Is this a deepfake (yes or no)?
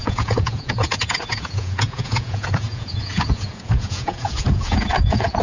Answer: yes